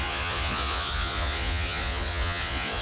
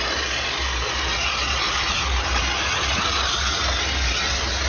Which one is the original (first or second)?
second